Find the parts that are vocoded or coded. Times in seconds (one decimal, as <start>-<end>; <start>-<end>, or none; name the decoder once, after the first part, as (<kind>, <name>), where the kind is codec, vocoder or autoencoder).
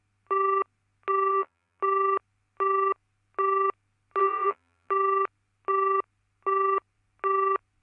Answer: 1.3-1.8 (vocoder, BigVGAN v2); 4.2-4.9